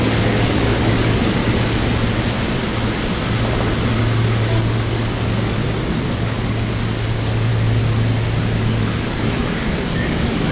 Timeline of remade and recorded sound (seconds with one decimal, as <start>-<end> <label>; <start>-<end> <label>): 0.0-1.4 remade; 1.4-3.9 recorded; 3.9-5.6 remade; 5.6-6.1 recorded; 6.1-7.5 remade; 7.5-8.6 recorded; 8.6-10.5 remade